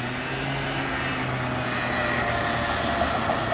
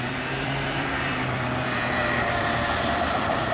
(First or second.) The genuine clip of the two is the first